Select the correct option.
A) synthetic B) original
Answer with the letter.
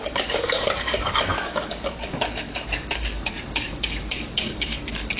A